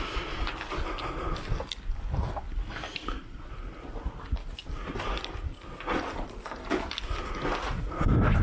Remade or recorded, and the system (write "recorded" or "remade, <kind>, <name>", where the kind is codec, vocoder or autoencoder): recorded